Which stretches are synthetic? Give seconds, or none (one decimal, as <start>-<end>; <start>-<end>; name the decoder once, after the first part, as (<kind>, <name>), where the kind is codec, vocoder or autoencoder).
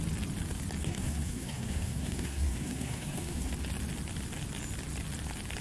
0.8-3.5 (codec, SNAC)